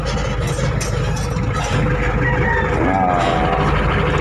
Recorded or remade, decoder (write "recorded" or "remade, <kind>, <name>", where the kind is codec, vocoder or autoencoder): recorded